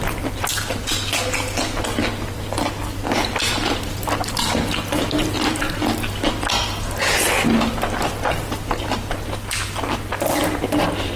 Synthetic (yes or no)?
no